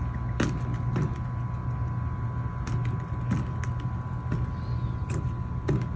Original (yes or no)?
yes